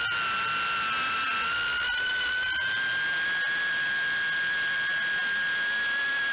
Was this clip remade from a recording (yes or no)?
no